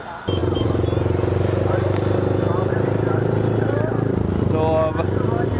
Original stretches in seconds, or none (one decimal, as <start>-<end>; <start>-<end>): 0.0-5.6